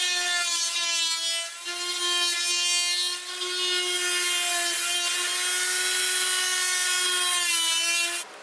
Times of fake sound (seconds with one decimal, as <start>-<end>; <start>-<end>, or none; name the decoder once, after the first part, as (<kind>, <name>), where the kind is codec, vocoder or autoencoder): none